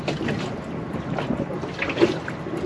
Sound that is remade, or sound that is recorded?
recorded